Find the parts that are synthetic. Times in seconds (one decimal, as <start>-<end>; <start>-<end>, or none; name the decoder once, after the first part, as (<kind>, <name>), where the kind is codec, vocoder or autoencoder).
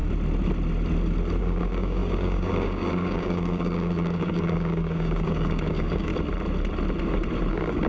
1.4-6.1 (codec, DAC); 7.5-7.9